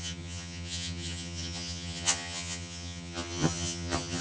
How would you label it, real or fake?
fake